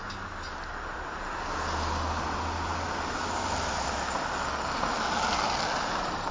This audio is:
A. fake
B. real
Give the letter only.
B